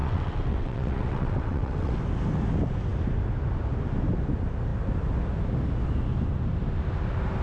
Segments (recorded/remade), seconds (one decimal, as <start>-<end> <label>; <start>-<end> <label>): 0.0-2.0 remade; 2.0-7.4 recorded